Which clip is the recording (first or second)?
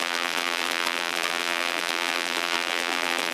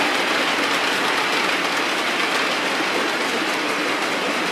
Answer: second